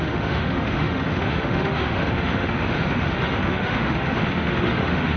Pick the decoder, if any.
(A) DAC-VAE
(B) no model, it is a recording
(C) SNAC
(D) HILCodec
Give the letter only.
A